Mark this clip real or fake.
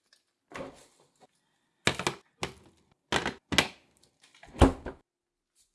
real